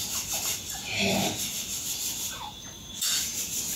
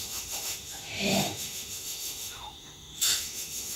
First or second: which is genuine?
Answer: first